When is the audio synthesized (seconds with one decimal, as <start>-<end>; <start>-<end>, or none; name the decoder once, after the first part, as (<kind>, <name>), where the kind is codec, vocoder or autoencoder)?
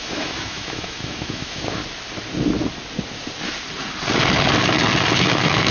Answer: 0.0-1.8 (autoencoder, DAC-VAE); 5.2-5.7